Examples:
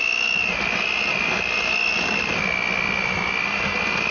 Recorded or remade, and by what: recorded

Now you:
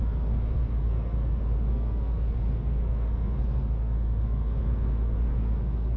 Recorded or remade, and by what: remade, codec, SNAC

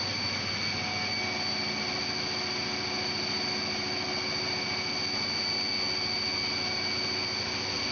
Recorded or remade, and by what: recorded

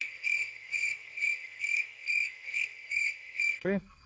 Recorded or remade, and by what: remade, codec, SNAC